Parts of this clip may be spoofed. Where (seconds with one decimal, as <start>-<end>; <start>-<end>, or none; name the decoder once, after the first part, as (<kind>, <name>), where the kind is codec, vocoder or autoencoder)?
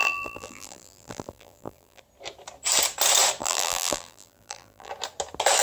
0.0-2.0 (vocoder, BigVGAN v2); 3.4-4.9